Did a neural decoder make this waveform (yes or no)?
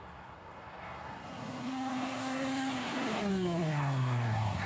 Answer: yes